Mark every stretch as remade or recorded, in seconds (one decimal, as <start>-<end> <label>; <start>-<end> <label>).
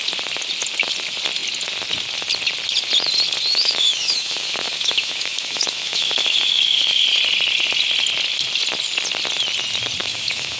0.0-3.5 recorded; 3.5-7.0 remade; 7.0-10.0 recorded; 10.0-10.6 remade